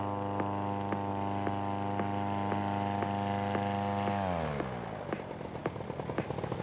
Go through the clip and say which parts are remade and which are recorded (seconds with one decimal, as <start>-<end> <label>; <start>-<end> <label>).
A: 0.0-6.6 recorded